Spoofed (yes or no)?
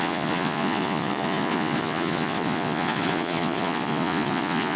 yes